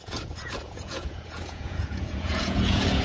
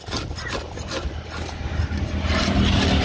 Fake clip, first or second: first